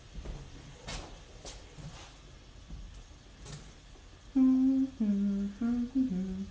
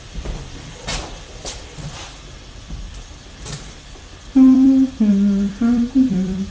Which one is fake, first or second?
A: second